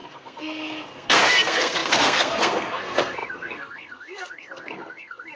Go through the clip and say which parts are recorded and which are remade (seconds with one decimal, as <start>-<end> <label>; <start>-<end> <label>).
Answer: 0.0-5.4 remade